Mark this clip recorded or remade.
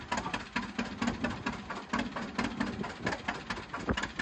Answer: recorded